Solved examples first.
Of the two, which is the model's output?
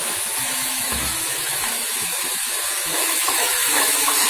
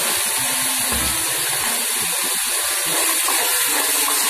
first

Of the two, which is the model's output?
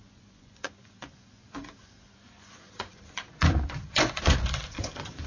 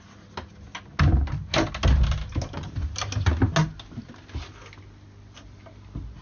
first